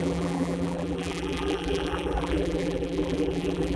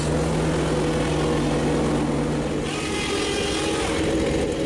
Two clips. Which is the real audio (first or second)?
second